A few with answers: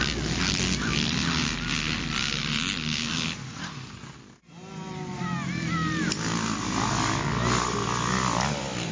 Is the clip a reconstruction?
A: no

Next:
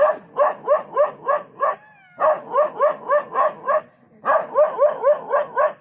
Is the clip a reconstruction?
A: no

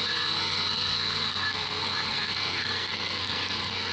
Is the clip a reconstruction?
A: yes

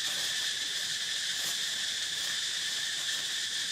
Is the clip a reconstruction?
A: yes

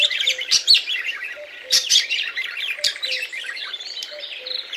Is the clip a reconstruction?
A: yes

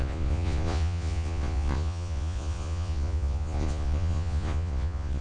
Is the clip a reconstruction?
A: yes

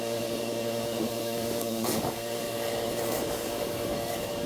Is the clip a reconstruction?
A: yes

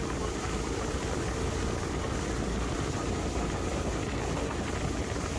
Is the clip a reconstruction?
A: no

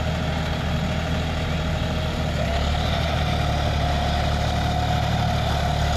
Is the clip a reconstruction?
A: no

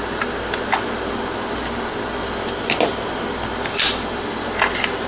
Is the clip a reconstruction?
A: no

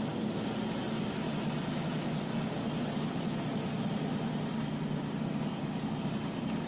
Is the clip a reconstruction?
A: no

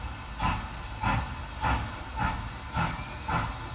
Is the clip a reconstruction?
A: no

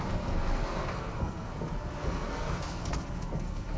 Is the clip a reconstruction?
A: yes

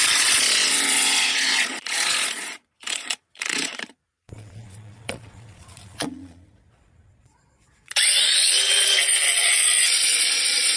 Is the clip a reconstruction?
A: yes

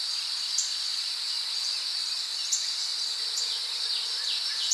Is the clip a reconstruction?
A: no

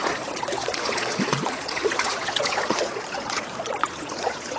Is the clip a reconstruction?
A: yes